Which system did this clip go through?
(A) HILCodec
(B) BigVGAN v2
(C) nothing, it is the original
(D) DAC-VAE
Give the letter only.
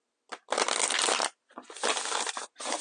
C